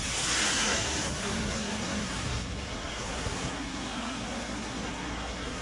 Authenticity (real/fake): fake